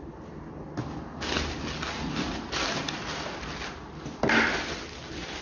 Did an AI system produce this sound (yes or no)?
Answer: no